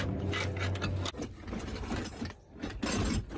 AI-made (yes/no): no